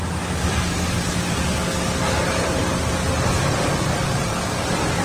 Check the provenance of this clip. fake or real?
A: real